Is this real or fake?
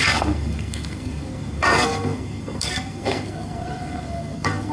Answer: fake